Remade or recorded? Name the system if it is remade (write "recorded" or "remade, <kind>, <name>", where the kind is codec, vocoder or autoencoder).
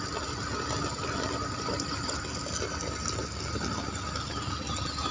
recorded